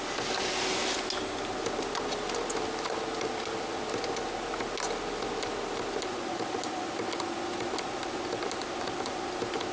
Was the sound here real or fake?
real